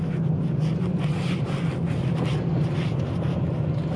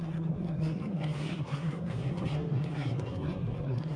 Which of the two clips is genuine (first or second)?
first